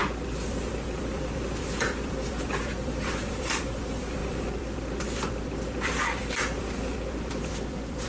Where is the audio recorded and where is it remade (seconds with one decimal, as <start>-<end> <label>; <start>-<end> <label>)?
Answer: 0.0-8.1 remade